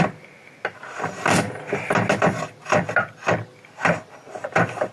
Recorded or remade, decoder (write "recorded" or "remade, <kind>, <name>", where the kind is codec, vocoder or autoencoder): recorded